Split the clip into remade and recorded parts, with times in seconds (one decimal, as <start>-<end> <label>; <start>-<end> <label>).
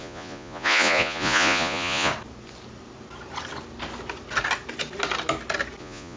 0.0-2.1 remade; 2.1-5.8 recorded; 5.8-6.2 remade